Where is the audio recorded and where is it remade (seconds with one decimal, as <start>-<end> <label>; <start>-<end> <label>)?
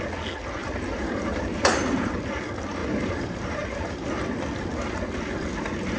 0.0-0.6 recorded; 0.6-2.2 remade; 2.2-2.8 recorded; 2.8-4.1 remade; 4.1-6.0 recorded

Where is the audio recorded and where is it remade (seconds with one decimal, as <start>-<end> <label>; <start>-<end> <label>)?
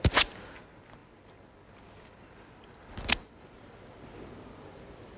0.0-5.2 recorded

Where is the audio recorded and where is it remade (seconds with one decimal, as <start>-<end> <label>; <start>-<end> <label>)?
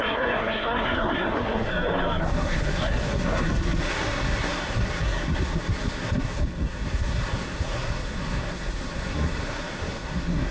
0.0-1.7 remade; 1.7-2.2 recorded; 2.2-10.5 remade